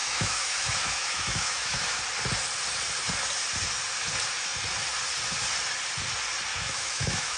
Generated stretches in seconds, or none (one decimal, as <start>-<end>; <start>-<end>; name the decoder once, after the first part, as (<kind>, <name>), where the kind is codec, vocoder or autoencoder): 0.0-2.0 (autoencoder, DAC-VAE); 6.5-7.4

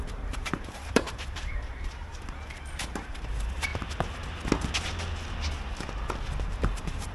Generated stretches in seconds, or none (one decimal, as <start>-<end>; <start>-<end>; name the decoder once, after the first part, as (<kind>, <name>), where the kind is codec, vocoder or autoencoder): 0.0-2.1 (vocoder, BigVGAN v2); 2.7-3.7; 6.5-7.1

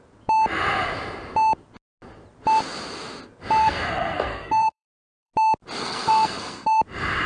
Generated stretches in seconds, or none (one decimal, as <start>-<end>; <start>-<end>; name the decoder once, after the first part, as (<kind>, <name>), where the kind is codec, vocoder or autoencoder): 3.6-5.3 (codec, SNAC); 5.8-6.8

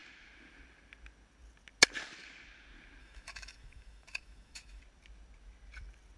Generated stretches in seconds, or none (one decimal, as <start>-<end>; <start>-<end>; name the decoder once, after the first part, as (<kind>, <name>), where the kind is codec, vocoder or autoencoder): 3.0-4.8 (autoencoder, DAC-VAE)